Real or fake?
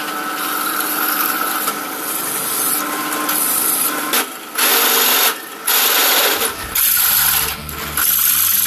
real